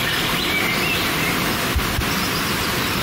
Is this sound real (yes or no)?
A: yes